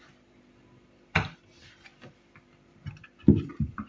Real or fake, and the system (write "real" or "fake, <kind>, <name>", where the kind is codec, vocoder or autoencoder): fake, vocoder, BigVGAN v2